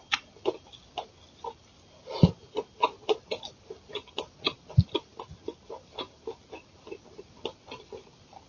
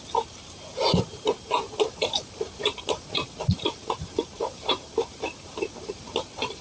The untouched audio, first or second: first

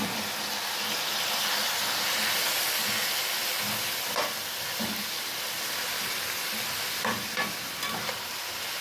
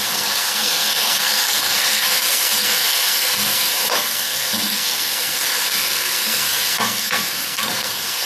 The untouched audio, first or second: first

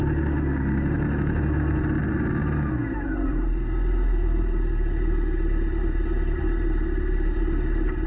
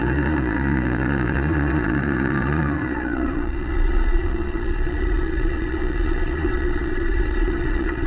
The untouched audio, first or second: first